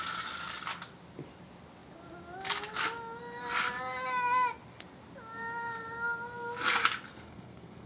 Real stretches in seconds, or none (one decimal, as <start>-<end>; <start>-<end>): 0.0-7.1